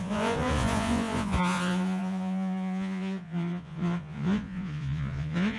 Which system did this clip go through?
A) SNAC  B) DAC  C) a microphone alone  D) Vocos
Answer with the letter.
D